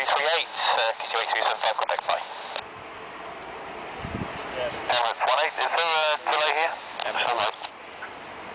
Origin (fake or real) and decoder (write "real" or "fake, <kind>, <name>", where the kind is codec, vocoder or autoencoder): real